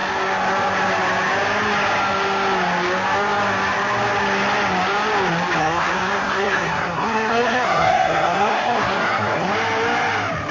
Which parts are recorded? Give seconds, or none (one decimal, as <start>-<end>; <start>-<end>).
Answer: 0.0-5.6; 9.5-10.5